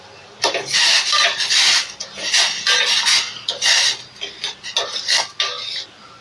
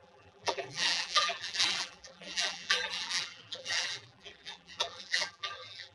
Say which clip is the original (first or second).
first